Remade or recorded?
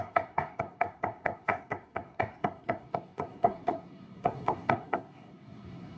remade